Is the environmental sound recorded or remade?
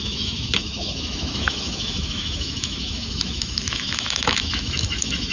remade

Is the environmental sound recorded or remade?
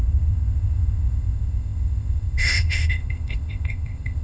remade